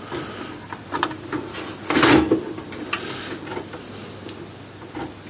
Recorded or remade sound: recorded